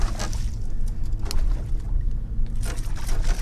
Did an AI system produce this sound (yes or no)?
no